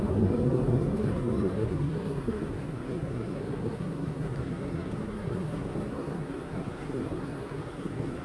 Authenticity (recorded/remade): remade